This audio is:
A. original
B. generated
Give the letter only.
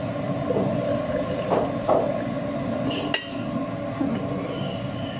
A